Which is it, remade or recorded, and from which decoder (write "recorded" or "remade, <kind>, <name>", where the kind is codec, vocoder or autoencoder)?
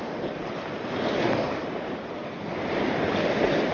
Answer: recorded